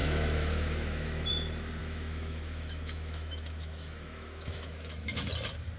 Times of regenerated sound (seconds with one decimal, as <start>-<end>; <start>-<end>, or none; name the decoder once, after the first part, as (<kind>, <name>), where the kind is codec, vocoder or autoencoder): 0.0-1.3 (autoencoder, DAC-VAE); 1.8-5.3